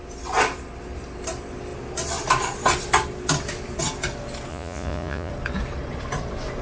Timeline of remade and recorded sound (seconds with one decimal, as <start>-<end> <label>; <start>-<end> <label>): 0.0-4.5 recorded; 4.5-5.3 remade; 5.3-6.6 recorded